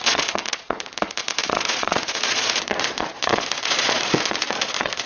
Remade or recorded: remade